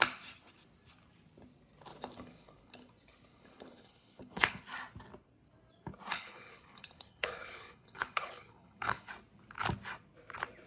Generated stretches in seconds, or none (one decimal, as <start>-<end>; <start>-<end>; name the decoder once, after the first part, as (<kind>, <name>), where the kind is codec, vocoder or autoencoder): 1.9-2.9 (codec, HILCodec); 3.3-4.6; 6.1-9.1

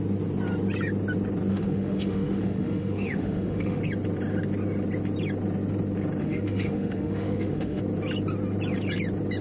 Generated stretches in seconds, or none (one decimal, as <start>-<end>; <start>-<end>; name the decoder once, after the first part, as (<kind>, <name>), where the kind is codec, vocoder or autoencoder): 1.5-3.8 (autoencoder, DAC-VAE); 6.2-7.8

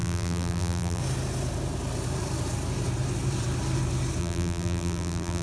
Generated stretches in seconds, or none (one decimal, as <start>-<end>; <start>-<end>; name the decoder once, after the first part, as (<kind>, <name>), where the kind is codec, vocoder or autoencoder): 0.0-1.0 (vocoder, BigVGAN v2); 4.2-5.4